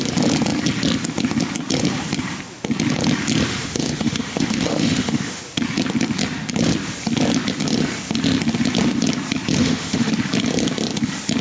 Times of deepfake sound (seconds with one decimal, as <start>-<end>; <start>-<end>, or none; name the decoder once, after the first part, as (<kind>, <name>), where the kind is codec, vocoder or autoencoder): 3.5-5.4 (autoencoder, DAC-VAE); 9.6-10.1